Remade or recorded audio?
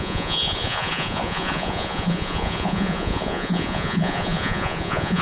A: remade